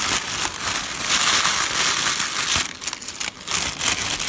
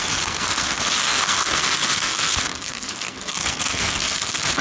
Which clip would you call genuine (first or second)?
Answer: first